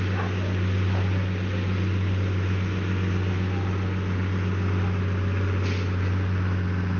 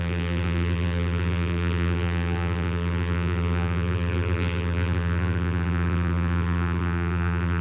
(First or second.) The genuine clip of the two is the first